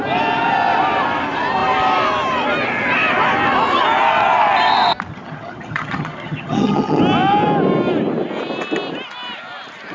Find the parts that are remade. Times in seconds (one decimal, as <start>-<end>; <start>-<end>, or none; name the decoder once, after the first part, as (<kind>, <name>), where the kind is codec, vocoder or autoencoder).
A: 5.1-7.0 (vocoder, HiFi-GAN)